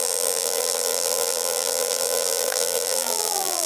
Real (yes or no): no